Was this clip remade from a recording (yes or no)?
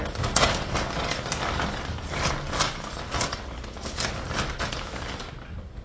no